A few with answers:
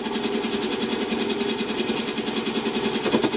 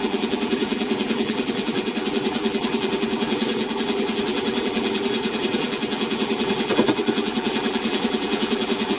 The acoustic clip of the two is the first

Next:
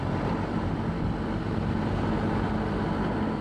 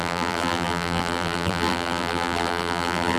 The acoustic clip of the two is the first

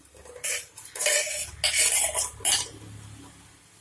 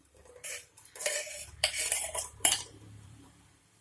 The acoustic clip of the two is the first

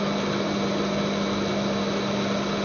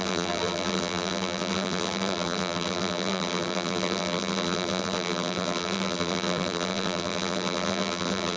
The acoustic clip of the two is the first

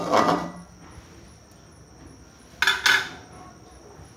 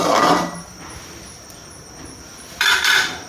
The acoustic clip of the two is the first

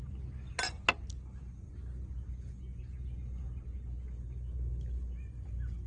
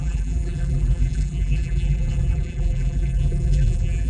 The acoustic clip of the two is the first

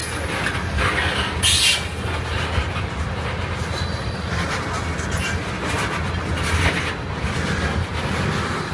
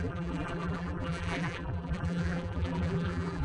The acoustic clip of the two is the first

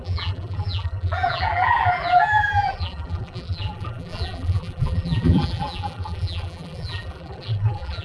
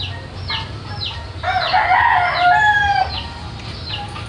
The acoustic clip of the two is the second